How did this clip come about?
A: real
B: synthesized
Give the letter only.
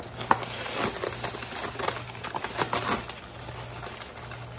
A